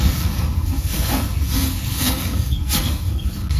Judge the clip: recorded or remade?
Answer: remade